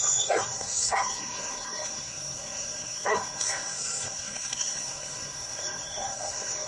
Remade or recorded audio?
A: remade